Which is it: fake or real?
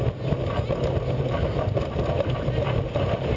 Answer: real